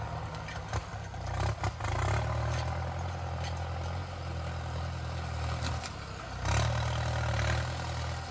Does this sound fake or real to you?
real